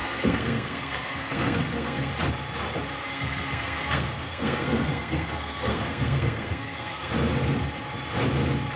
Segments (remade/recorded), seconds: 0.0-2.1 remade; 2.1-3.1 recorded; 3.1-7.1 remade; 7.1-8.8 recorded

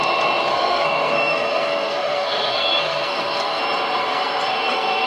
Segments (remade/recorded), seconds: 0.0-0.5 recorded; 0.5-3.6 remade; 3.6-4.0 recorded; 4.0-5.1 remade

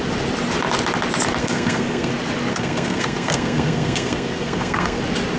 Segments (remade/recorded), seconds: 0.0-1.4 recorded; 1.4-2.1 remade; 2.1-2.5 recorded; 2.5-5.0 remade; 5.0-5.4 recorded

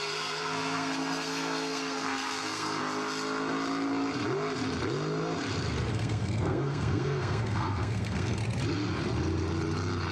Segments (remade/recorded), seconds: 0.0-2.8 remade; 2.8-5.9 recorded; 5.9-8.4 remade; 8.4-10.1 recorded